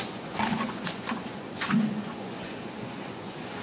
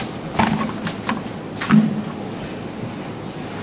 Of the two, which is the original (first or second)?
second